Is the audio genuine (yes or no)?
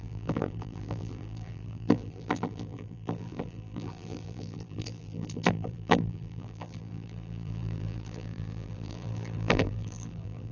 no